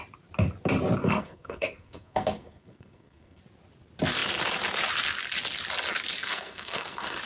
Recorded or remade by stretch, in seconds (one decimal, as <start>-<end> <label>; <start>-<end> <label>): 0.0-1.0 recorded; 1.0-3.4 remade; 3.4-6.2 recorded; 6.2-7.2 remade